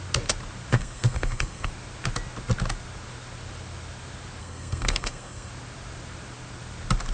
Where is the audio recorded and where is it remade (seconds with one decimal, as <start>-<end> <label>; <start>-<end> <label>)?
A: 0.0-0.7 recorded; 0.7-1.7 remade; 1.7-4.4 recorded; 4.4-5.5 remade; 5.5-7.1 recorded